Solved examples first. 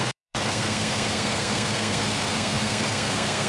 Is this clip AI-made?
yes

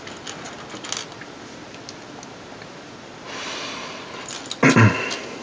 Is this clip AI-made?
no